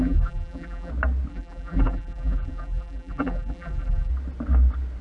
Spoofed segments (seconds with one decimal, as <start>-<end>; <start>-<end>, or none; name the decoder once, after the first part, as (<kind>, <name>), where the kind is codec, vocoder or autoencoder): 0.0-0.9 (vocoder, BigVGAN v2); 1.3-4.1